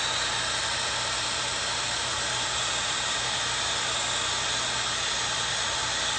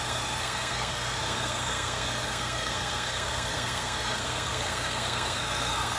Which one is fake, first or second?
second